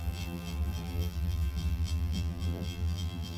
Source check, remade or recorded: remade